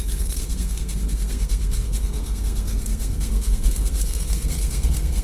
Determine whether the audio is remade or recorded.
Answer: remade